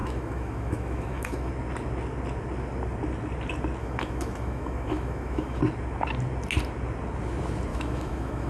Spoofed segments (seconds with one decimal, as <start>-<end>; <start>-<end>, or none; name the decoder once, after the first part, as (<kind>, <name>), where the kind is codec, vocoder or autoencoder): 0.0-1.5 (autoencoder, DAC-VAE); 3.8-5.6; 7.7-8.5